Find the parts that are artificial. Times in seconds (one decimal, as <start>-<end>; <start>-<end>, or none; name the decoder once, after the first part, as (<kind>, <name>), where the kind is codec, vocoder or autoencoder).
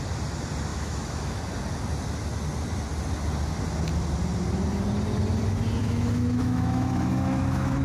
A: 0.7-1.4 (autoencoder, DAC-VAE); 5.8-7.8